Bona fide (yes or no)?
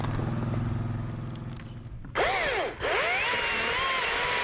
yes